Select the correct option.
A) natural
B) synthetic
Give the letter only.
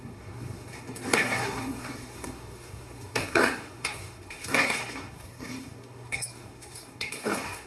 B